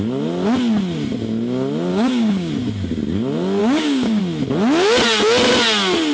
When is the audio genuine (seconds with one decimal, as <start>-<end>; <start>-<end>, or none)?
0.0-1.9; 2.5-3.6; 4.2-6.1